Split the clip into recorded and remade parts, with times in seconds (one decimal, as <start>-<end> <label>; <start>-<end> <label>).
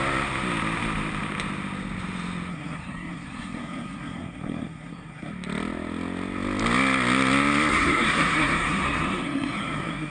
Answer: 0.0-2.5 recorded; 2.5-5.3 remade; 5.3-7.7 recorded; 7.7-10.1 remade